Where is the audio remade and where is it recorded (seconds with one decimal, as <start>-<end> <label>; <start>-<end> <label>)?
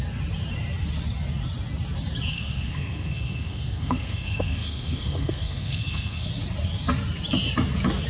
0.0-2.3 recorded; 2.3-6.3 remade; 6.3-8.1 recorded